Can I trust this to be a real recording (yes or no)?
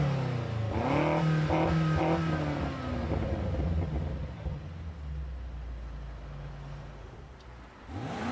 yes